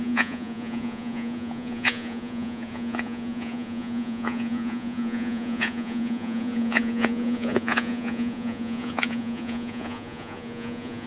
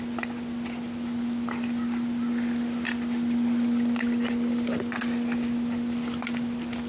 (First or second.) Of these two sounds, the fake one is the first